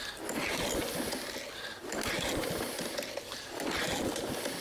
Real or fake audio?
real